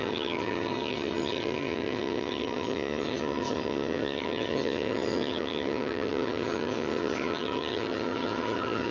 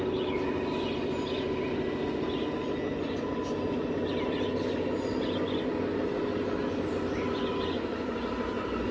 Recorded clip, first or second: second